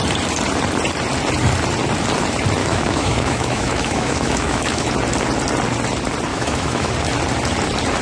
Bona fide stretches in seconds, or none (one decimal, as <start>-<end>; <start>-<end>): 0.0-2.6; 4.9-6.3; 6.9-8.0